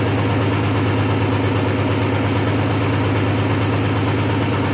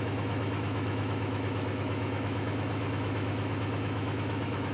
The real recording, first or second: first